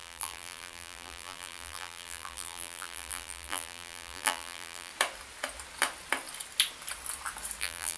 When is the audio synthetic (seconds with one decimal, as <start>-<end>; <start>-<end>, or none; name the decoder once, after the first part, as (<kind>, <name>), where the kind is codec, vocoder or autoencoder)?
0.0-4.9 (vocoder, BigVGAN v2); 7.6-8.0